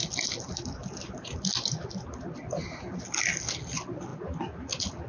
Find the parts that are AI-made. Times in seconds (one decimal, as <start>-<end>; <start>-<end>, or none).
none